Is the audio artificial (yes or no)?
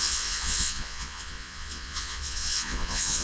yes